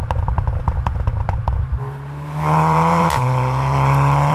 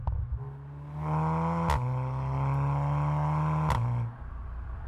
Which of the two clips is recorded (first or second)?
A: second